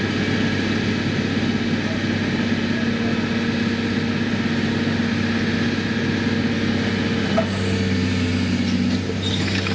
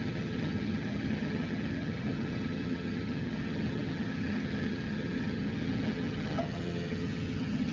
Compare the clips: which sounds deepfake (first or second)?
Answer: second